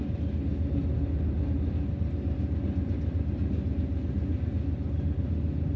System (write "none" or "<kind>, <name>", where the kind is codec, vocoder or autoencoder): none